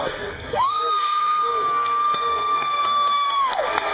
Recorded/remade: remade